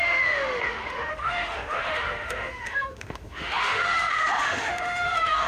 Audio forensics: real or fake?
fake